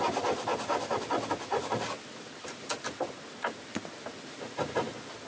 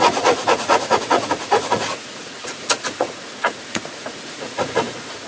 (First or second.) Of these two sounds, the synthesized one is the second